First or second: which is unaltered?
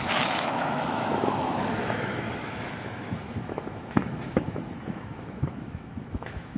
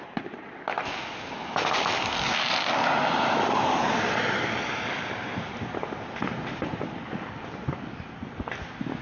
second